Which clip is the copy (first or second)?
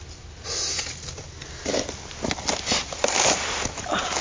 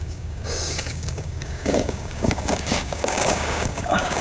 second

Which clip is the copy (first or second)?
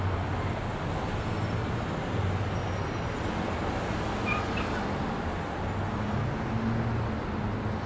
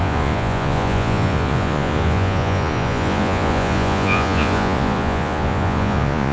second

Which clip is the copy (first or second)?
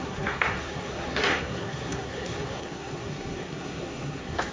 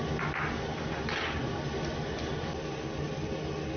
first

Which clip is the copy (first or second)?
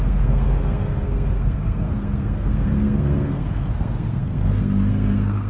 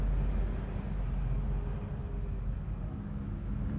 first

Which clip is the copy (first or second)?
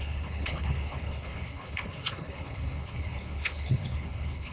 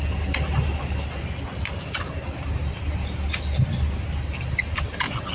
first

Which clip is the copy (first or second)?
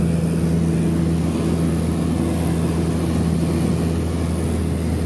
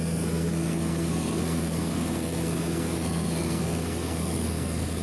second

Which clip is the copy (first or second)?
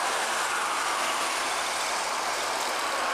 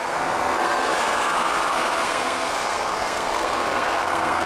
second